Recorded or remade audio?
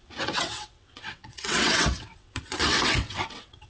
remade